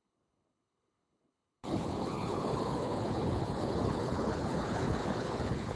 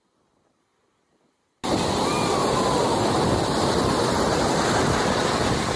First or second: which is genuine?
second